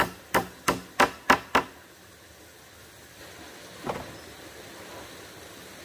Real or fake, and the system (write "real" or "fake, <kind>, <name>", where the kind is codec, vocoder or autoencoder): real